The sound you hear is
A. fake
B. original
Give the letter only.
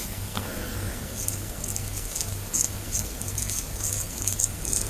A